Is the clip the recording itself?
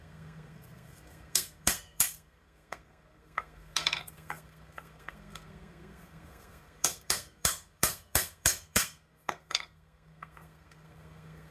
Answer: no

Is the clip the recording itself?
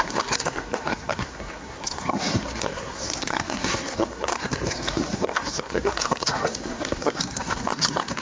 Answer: no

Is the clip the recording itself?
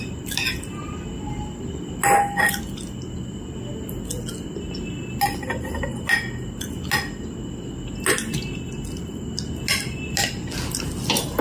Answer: yes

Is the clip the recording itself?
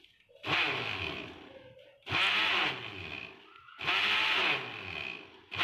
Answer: yes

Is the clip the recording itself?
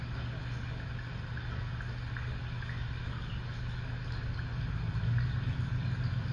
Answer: yes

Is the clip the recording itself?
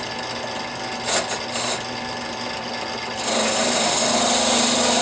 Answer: yes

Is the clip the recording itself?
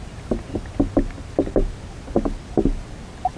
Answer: yes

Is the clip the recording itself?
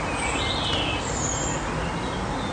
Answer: yes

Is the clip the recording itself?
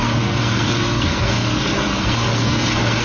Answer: no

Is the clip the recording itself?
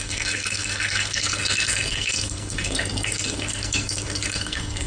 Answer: no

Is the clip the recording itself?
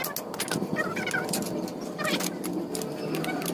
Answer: yes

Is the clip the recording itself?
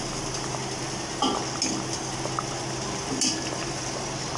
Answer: yes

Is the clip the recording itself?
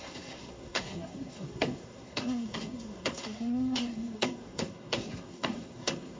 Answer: no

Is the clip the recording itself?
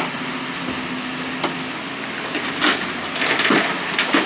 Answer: yes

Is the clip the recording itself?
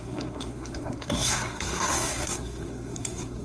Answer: no